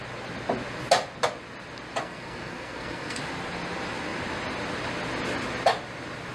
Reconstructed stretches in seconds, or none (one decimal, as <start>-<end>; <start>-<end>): 2.0-3.2